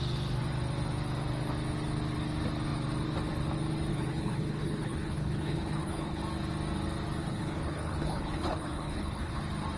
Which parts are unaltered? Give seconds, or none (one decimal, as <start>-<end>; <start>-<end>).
0.0-3.9; 6.2-7.2; 9.4-9.8